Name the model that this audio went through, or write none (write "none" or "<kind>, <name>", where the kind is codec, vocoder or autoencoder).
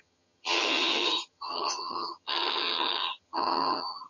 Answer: vocoder, HiFi-GAN